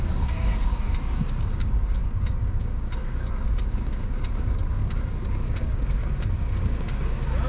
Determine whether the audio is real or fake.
fake